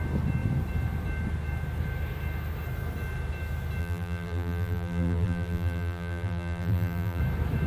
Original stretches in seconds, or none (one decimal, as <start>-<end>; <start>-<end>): 0.0-3.8; 7.2-7.7